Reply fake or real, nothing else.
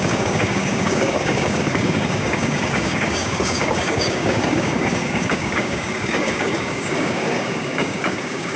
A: fake